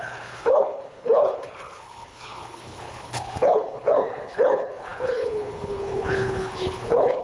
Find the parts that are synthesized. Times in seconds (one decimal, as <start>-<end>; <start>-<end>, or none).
0.0-7.2